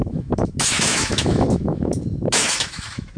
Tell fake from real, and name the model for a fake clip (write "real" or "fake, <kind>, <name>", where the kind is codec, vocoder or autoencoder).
fake, autoencoder, DAC-VAE